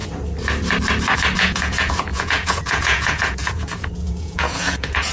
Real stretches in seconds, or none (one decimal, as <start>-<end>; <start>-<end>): 0.0-1.4